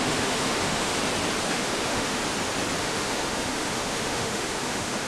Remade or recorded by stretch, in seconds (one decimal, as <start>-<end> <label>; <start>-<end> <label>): 0.0-0.9 remade; 0.9-1.5 recorded; 1.5-2.2 remade; 2.2-2.8 recorded; 2.8-5.1 remade